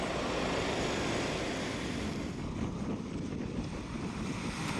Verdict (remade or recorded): remade